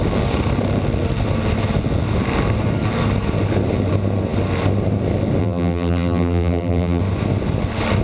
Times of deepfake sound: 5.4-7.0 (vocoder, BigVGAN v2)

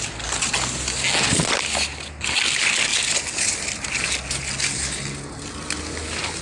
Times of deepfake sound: none

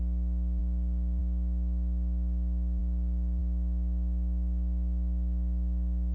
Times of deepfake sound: none

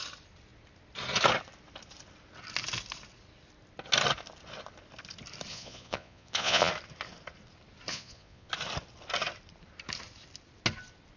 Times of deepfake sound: 5.5-6.7 (vocoder, Vocos); 7.9-8.5

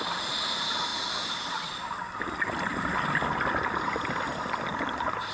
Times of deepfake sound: none

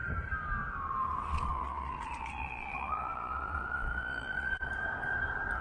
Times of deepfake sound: 1.3-4.7 (vocoder, Vocos)

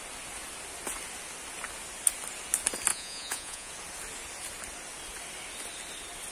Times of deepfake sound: 2.9-3.7 (vocoder, Vocos)

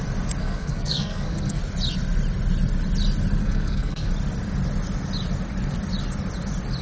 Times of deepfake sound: 0.4-1.6 (codec, SNAC); 3.4-4.1